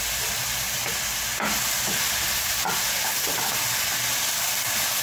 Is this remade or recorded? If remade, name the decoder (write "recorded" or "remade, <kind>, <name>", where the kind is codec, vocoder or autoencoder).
recorded